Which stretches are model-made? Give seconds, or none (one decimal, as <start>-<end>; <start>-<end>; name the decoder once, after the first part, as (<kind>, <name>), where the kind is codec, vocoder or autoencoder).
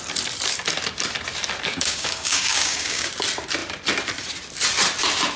1.7-3.1 (codec, DAC)